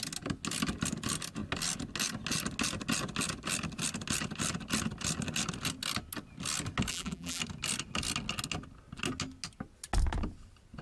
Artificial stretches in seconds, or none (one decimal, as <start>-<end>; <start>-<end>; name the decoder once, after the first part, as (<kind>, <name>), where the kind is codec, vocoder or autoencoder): 6.9-7.4 (vocoder, BigVGAN v2)